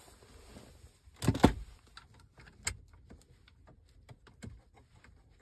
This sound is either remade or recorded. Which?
recorded